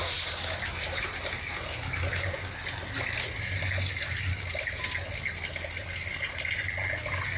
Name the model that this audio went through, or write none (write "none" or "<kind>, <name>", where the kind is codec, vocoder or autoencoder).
none